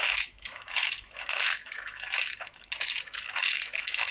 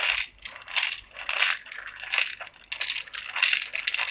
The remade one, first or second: first